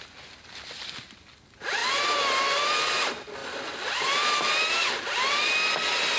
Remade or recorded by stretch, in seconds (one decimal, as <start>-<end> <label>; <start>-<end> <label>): 0.0-6.2 recorded